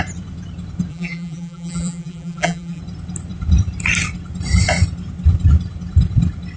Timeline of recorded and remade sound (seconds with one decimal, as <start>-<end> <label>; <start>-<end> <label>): 0.0-0.9 recorded; 0.9-2.8 remade; 2.8-6.6 recorded

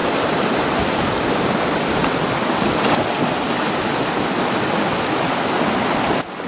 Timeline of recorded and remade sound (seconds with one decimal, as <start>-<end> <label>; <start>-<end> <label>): 0.0-0.8 remade; 0.8-6.5 recorded

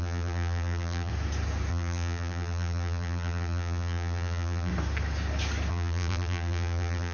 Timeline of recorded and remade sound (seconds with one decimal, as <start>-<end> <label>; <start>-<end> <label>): 0.0-1.1 remade; 1.1-1.7 recorded; 1.7-4.7 remade; 4.7-5.7 recorded; 5.7-7.1 remade

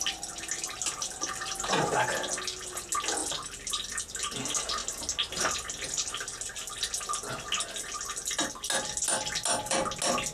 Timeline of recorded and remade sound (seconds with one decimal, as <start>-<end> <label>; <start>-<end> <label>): 0.0-3.2 recorded; 3.2-4.1 remade; 4.1-10.3 recorded

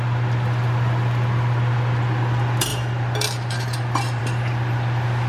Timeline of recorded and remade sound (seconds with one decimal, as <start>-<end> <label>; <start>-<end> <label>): 0.0-5.3 recorded

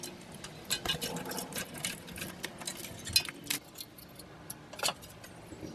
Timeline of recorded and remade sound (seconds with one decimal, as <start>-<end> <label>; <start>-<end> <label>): 0.0-5.7 recorded